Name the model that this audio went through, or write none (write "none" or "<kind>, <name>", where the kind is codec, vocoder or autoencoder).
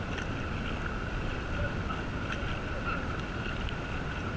none